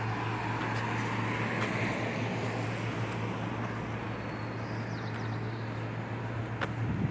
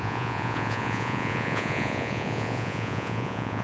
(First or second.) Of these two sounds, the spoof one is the second